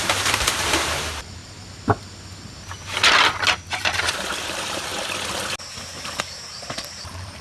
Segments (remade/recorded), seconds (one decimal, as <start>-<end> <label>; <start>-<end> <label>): 0.0-1.4 remade; 1.4-3.7 recorded; 3.7-4.9 remade; 4.9-6.2 recorded; 6.2-7.4 remade